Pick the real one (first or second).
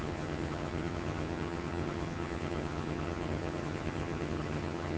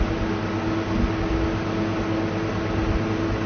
second